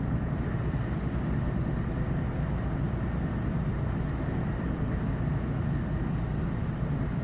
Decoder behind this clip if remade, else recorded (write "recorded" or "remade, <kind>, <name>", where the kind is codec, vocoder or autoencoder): recorded